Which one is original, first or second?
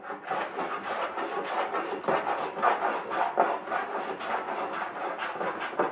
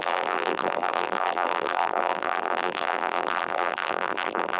first